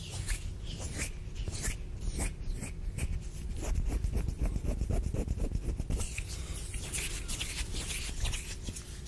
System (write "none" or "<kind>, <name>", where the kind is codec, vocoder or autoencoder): none